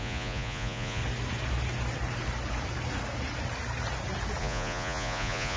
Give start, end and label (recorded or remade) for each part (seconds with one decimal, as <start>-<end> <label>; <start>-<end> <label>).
0.0-1.0 remade; 1.0-4.4 recorded; 4.4-5.6 remade